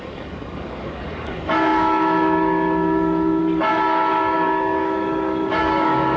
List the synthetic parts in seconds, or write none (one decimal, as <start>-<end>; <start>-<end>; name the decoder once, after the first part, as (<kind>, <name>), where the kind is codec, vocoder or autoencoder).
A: 0.0-6.2 (codec, DAC)